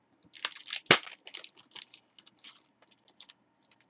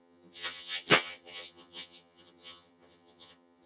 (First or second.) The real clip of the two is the first